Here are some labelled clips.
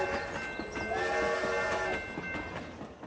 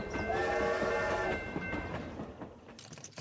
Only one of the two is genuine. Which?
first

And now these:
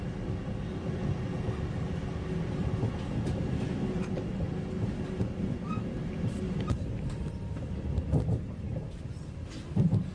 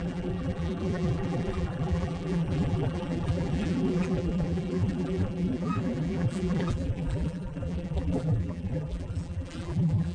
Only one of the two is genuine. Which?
first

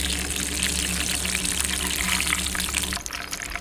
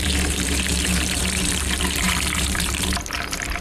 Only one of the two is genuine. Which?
first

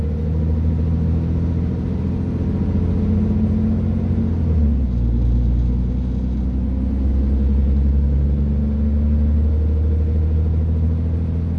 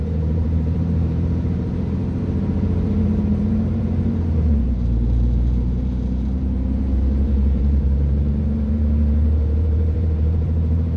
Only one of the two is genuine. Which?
first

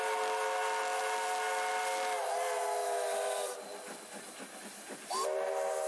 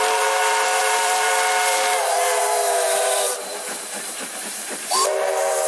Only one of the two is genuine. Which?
first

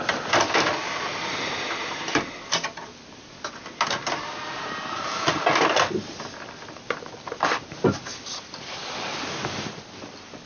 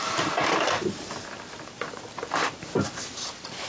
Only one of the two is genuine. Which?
first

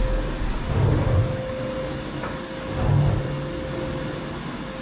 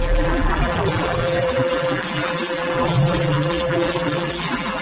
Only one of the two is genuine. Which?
first